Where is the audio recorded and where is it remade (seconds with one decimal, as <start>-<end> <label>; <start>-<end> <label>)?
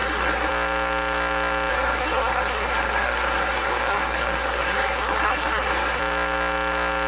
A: 0.0-0.5 remade; 0.5-1.7 recorded; 1.7-6.0 remade; 6.0-7.1 recorded